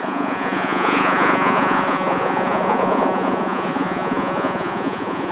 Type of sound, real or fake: fake